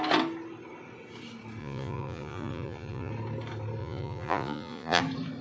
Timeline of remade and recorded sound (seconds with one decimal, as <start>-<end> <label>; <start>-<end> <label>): 0.0-1.6 recorded; 1.6-3.1 remade; 3.1-3.8 recorded; 3.8-5.0 remade; 5.0-5.4 recorded